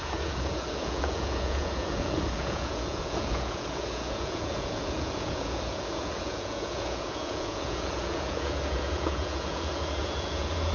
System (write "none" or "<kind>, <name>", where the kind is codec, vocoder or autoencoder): vocoder, Vocos